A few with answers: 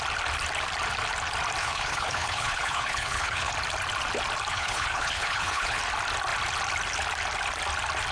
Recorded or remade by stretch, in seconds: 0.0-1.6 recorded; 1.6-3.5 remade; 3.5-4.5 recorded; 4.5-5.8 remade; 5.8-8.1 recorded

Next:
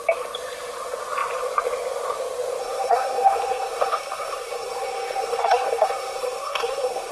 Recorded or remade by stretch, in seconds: 0.0-2.6 recorded; 2.6-7.1 remade

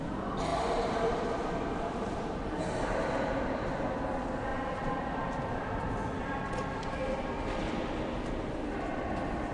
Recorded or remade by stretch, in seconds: 0.0-0.5 recorded; 0.5-2.4 remade; 2.4-4.5 recorded; 4.5-5.9 remade; 5.9-9.5 recorded

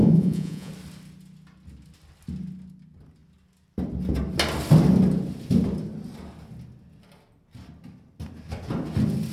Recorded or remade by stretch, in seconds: 0.0-0.7 remade; 0.7-9.3 recorded

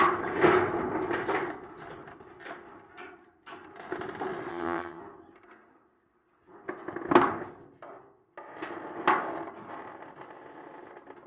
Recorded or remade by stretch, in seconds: 0.0-4.5 recorded; 4.5-5.0 remade; 5.0-11.3 recorded